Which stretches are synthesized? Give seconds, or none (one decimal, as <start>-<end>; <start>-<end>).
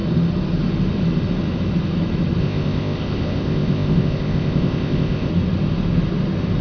2.4-5.3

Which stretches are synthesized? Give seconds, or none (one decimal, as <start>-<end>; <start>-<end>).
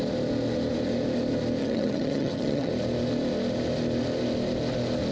1.6-2.7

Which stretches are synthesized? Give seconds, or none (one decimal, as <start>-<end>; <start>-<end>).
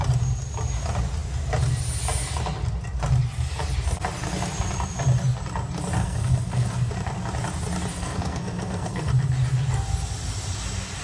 6.0-6.9; 7.9-9.1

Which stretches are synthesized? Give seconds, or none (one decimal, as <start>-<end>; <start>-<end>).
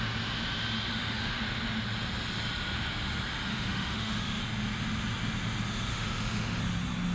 0.9-1.4; 3.5-4.4; 5.9-6.6